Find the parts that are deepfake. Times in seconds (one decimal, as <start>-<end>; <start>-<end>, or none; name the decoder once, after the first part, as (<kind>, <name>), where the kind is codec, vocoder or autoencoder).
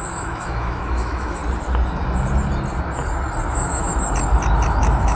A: 0.0-1.4 (autoencoder, DAC-VAE); 3.5-3.9; 4.8-5.2